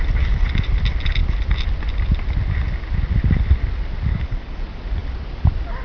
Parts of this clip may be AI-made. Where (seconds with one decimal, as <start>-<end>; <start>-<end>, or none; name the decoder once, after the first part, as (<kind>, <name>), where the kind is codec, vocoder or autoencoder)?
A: 4.1-4.6 (codec, DAC)